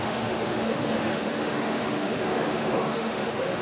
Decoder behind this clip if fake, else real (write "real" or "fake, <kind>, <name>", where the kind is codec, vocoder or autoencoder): fake, autoencoder, DAC-VAE